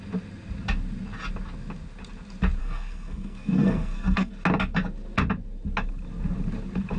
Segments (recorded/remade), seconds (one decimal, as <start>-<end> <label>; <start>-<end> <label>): 0.0-2.6 recorded; 2.6-4.3 remade; 4.3-7.0 recorded